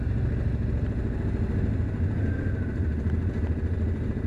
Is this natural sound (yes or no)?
yes